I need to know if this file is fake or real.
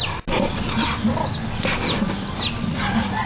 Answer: real